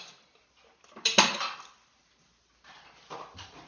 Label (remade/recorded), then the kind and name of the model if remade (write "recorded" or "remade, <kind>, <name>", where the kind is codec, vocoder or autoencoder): recorded